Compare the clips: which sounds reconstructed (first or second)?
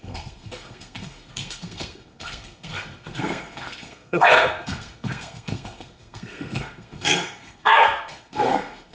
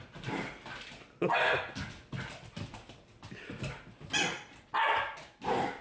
first